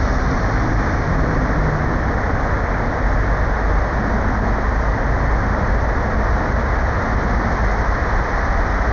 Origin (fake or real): real